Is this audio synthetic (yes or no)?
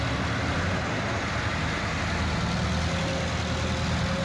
no